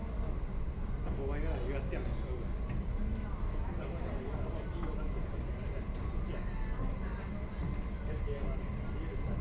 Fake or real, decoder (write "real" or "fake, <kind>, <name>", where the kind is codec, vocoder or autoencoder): real